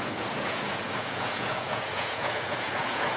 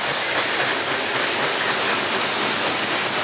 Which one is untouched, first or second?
second